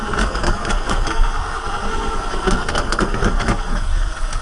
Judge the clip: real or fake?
fake